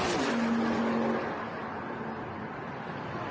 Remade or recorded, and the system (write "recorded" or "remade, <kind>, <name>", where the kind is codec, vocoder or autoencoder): recorded